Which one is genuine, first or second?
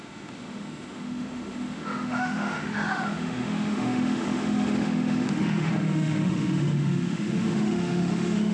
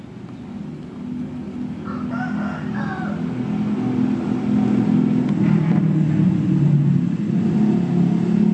second